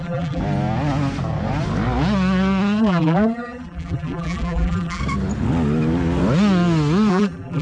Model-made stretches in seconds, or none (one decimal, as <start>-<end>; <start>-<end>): 0.0-0.4; 2.8-5.0; 7.1-7.6